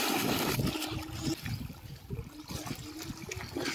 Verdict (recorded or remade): recorded